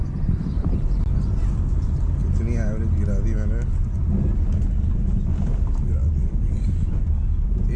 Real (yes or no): yes